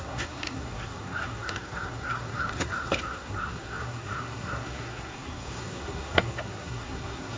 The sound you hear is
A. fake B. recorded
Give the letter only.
A